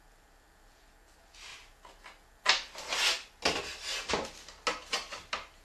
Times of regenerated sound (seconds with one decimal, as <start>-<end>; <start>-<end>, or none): none